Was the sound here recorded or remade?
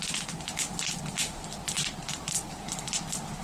recorded